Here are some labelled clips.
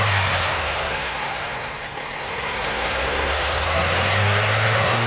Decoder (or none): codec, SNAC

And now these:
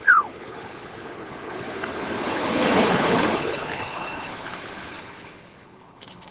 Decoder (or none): codec, HILCodec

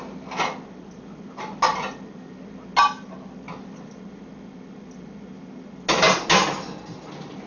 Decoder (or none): none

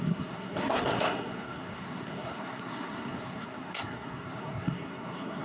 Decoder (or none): codec, SNAC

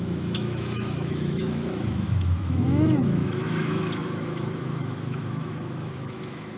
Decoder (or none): autoencoder, DAC-VAE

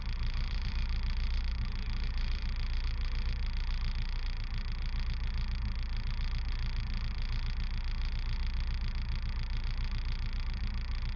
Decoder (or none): vocoder, BigVGAN v2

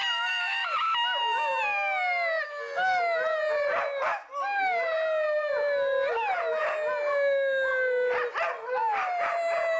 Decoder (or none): none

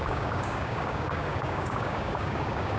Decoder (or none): codec, DAC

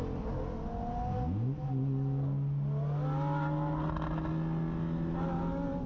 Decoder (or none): none